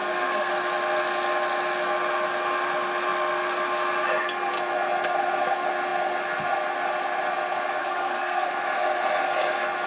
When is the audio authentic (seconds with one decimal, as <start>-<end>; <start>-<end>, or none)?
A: 0.5-7.8; 8.5-9.9